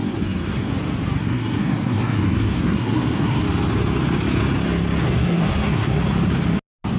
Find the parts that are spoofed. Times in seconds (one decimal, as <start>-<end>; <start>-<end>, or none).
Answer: 0.0-0.7; 1.2-3.4; 5.0-6.0